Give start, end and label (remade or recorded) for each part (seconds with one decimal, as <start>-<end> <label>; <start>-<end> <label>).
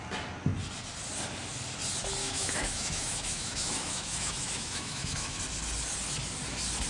0.0-2.2 recorded; 2.2-5.4 remade; 5.4-6.9 recorded